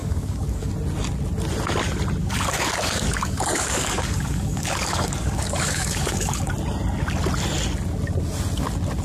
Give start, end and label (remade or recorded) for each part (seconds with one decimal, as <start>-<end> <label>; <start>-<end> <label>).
0.0-0.7 remade; 0.7-2.2 recorded; 2.2-6.5 remade; 6.5-9.0 recorded